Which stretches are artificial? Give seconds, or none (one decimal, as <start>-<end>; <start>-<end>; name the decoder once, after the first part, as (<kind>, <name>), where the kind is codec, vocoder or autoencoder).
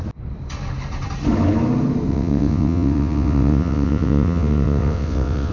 2.1-5.5 (vocoder, WaveNeXt)